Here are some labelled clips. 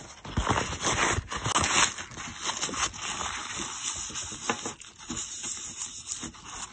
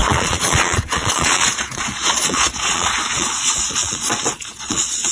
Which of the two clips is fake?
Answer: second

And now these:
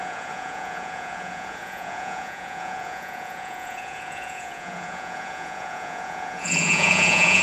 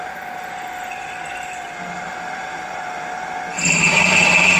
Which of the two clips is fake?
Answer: first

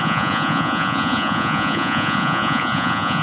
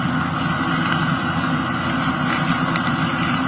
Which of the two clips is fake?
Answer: first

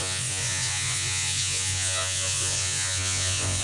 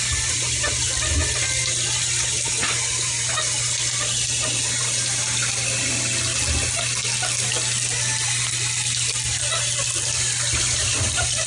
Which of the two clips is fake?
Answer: first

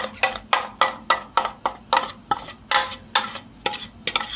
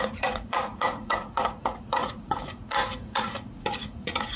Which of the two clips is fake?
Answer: second